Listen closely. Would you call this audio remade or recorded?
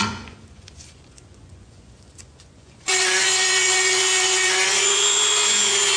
remade